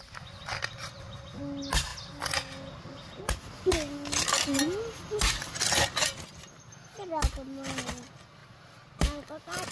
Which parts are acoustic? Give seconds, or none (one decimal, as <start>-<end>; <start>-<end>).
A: 0.0-9.7